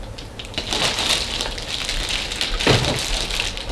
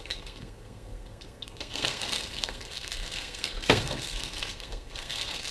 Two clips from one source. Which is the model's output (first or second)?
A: second